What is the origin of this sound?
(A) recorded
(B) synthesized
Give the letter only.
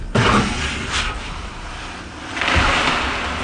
A